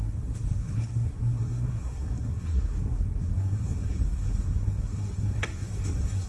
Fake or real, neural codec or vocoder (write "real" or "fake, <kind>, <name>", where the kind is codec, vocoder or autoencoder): fake, codec, SNAC